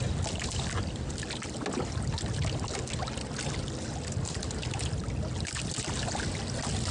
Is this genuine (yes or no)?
yes